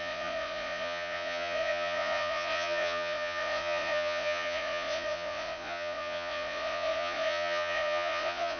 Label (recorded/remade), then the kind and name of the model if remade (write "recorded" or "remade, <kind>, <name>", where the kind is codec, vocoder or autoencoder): remade, vocoder, Vocos